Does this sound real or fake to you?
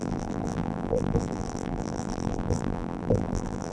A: fake